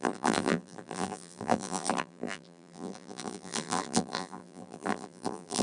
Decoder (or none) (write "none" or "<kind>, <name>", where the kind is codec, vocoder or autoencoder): vocoder, BigVGAN v2